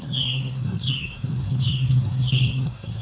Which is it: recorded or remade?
remade